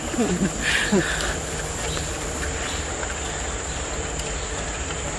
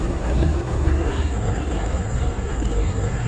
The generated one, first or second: second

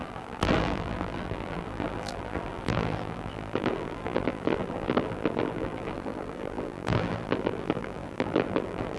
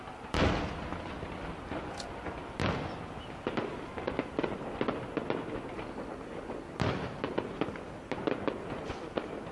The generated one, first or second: first